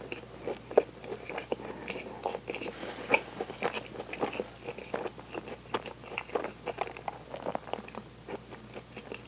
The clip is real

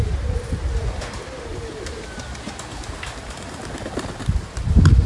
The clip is real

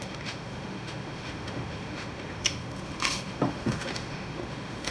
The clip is fake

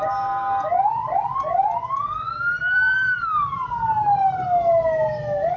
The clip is real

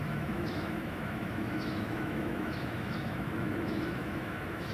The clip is fake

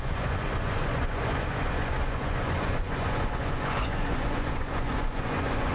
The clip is fake